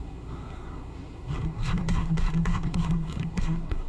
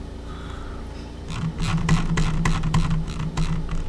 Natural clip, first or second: second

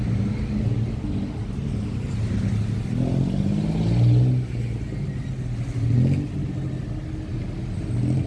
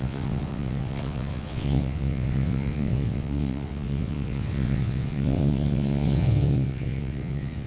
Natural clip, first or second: first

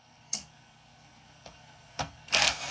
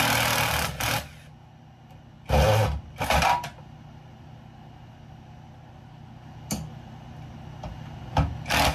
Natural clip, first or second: second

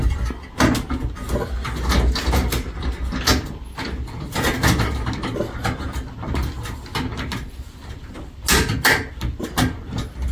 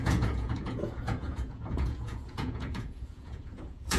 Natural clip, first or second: first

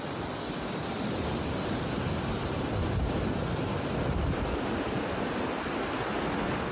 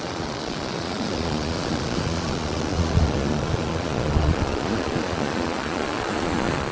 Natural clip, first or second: first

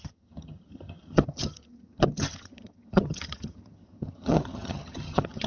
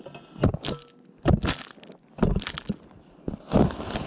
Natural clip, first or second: second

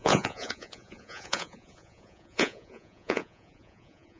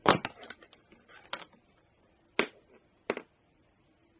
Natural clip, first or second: second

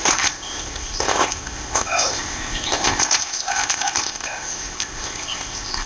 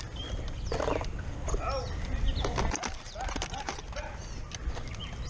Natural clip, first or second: second